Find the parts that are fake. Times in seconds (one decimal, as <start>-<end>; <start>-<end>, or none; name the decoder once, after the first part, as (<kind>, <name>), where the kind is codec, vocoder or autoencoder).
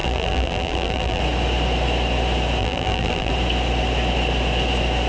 0.0-1.2 (vocoder, BigVGAN v2); 2.6-3.3